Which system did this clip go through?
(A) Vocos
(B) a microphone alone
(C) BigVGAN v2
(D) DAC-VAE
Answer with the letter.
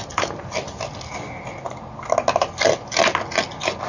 B